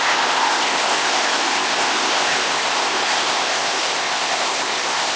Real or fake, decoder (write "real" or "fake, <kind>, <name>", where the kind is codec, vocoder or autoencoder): fake, codec, ZipCodec